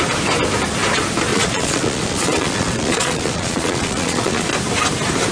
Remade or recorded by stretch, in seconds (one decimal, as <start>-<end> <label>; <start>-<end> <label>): 0.0-1.3 recorded; 1.3-4.5 remade; 4.5-5.3 recorded